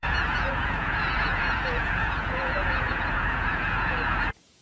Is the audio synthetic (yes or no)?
yes